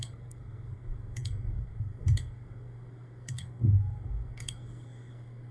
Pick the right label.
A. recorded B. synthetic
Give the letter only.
B